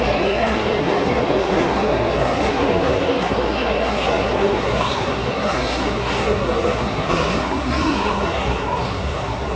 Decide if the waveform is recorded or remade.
remade